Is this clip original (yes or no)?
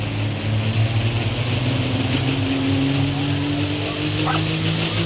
yes